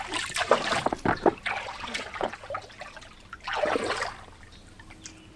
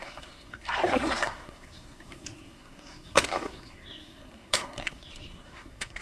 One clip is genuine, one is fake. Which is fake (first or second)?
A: second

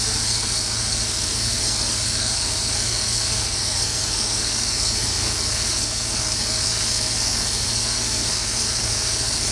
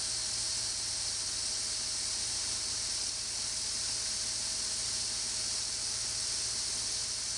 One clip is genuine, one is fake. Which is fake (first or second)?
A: first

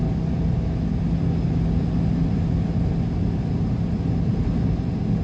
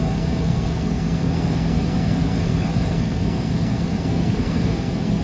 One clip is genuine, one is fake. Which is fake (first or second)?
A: second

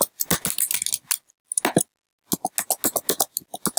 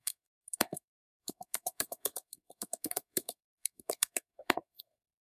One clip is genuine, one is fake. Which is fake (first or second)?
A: second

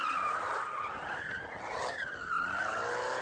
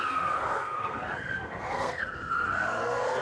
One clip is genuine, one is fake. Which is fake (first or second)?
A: second